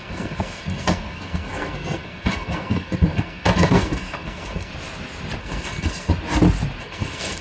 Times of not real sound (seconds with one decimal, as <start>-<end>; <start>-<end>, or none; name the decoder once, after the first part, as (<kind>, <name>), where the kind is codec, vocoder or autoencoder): 0.0-4.7 (codec, SNAC); 5.4-6.1; 6.8-7.4